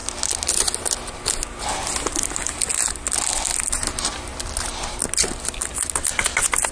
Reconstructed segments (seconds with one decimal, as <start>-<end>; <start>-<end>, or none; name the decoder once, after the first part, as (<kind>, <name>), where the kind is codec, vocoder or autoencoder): none

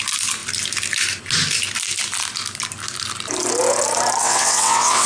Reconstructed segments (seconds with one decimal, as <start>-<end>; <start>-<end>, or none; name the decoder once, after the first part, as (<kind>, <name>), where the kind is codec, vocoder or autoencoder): 4.2-5.1 (vocoder, WaveNeXt)

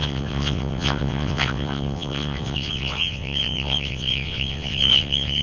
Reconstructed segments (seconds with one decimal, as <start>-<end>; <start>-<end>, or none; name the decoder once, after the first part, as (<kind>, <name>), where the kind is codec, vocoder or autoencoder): 0.0-5.4 (vocoder, WaveNeXt)

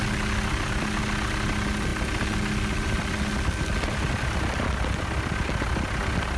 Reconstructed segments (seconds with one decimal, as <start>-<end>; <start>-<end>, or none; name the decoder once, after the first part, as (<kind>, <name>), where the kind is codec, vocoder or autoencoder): none

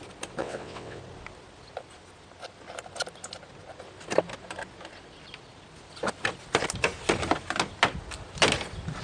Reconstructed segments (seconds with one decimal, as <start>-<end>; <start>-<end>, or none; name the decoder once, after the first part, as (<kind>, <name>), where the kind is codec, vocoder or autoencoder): 0.4-1.0 (vocoder, WaveNeXt)